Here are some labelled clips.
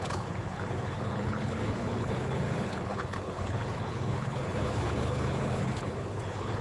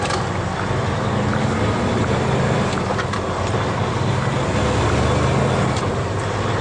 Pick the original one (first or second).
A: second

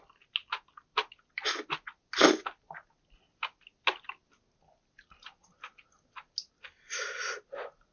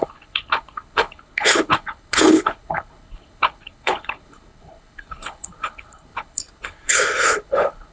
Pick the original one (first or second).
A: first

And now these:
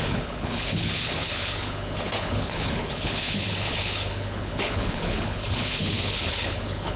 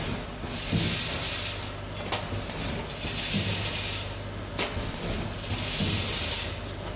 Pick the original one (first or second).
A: second